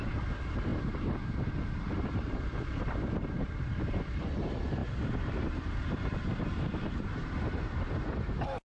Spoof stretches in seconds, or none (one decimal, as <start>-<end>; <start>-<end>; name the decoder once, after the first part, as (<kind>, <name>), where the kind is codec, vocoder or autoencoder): 0.0-8.8 (vocoder, BigVGAN v2)